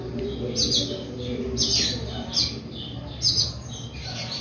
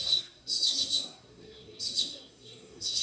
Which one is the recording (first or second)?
first